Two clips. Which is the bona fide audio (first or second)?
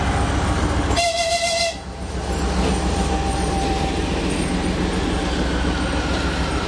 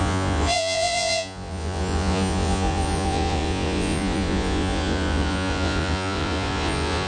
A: first